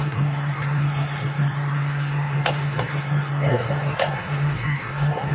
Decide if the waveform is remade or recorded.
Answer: remade